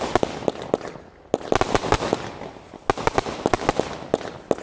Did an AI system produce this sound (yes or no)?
no